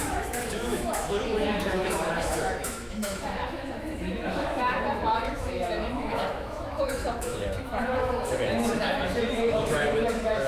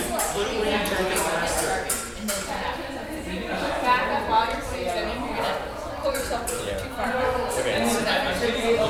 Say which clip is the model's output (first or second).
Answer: first